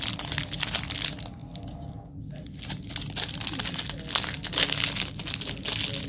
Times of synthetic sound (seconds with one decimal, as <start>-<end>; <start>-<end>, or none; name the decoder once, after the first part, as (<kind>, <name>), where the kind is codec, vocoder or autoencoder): none